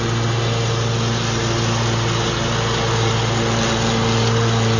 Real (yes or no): yes